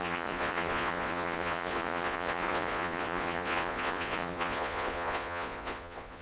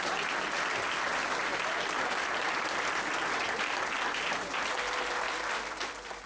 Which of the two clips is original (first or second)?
second